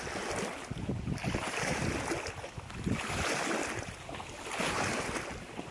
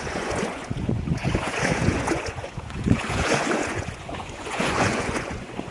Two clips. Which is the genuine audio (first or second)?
first